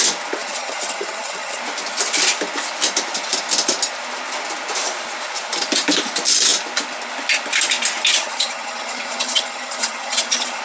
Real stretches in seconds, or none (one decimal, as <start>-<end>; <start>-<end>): 0.0-0.4; 1.6-8.1